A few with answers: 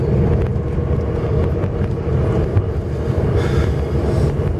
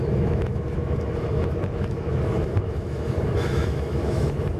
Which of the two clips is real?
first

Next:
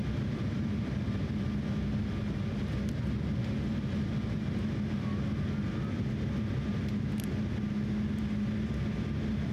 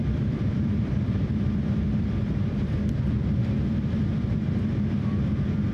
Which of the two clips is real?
first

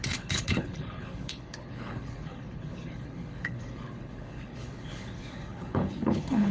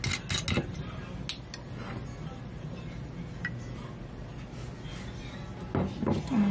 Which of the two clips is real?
second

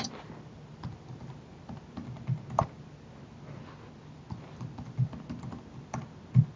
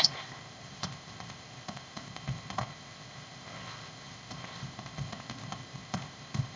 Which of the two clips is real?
first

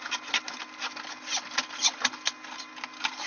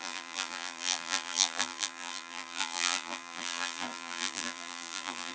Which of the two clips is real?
first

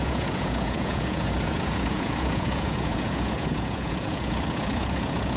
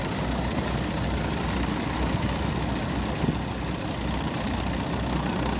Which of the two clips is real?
second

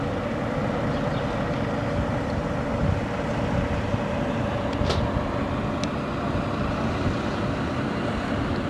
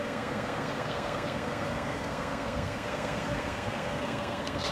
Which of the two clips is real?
first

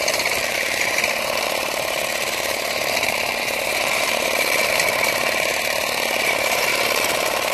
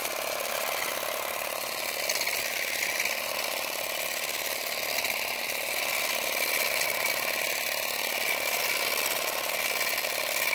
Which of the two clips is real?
second